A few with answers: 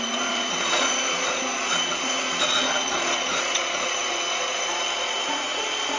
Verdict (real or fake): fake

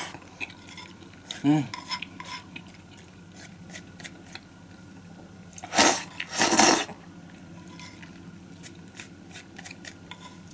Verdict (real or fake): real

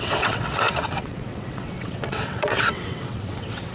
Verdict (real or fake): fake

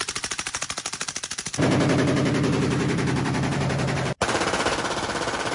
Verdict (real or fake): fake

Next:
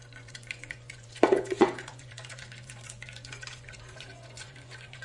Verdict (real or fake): fake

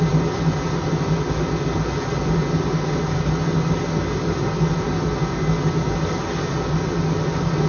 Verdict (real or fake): real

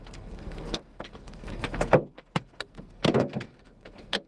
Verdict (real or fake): fake